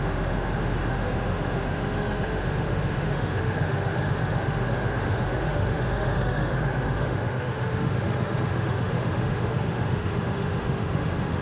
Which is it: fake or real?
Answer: fake